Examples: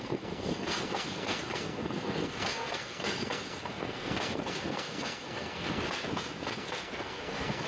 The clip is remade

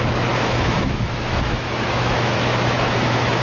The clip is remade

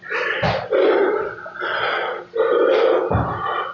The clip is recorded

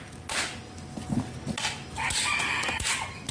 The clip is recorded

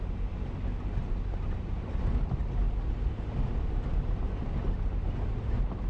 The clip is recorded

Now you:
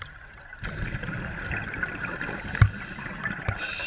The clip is recorded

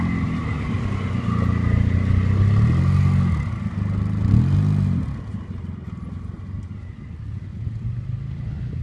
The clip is recorded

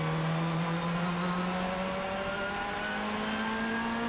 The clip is recorded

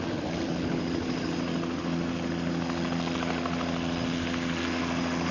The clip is recorded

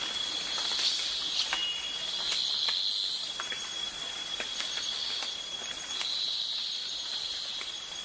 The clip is recorded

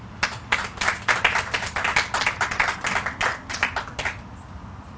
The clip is recorded